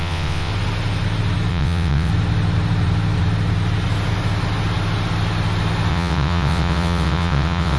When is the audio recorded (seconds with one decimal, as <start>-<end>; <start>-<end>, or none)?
0.5-1.5; 2.1-5.9